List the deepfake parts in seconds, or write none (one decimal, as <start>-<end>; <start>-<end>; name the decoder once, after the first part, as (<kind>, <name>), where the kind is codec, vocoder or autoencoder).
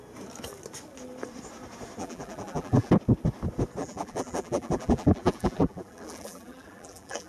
2.0-2.9 (vocoder, BigVGAN v2); 3.8-7.3